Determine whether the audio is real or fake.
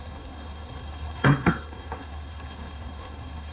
fake